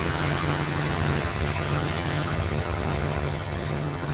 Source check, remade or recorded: remade